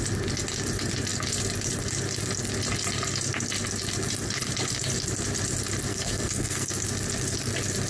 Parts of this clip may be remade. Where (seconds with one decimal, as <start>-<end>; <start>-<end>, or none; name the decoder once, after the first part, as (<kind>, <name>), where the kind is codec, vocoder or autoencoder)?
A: 5.9-6.7 (codec, SNAC)